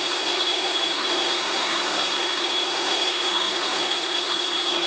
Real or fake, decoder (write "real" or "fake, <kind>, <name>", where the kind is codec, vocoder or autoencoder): fake, codec, SNAC